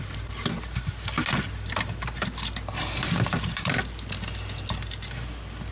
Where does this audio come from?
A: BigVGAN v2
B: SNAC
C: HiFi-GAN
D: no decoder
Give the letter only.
D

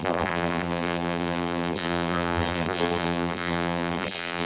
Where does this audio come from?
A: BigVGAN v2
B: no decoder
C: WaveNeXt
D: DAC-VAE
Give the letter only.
A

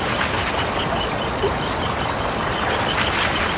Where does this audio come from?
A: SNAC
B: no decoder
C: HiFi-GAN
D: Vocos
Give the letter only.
B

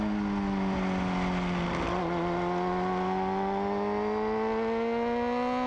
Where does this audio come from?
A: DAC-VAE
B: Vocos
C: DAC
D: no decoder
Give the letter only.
D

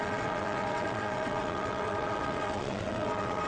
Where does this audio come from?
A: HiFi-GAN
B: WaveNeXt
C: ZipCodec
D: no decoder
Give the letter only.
B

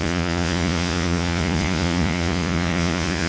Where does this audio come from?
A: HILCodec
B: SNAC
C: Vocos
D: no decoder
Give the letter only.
C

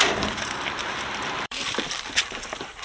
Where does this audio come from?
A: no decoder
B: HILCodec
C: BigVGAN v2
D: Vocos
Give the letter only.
C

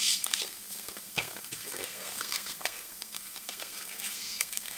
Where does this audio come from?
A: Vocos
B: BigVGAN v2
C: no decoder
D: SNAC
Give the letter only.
D